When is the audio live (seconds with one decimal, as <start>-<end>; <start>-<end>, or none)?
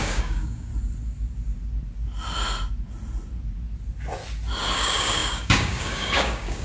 0.7-4.7